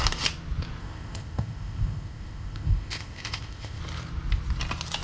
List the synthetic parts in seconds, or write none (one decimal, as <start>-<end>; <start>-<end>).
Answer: 0.8-3.8